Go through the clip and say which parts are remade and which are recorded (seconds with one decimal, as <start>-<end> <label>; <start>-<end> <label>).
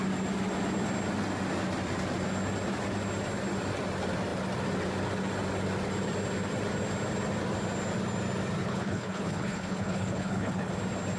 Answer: 0.0-8.6 recorded; 8.6-10.7 remade; 10.7-11.2 recorded